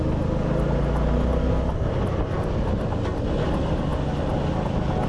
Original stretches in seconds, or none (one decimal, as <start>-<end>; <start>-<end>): 0.0-5.1